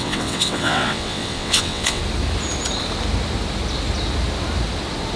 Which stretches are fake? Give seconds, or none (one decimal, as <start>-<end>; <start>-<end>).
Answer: 0.0-2.0